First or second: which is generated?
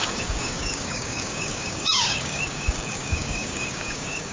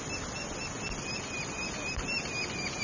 first